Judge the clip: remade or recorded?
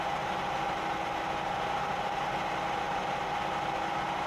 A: recorded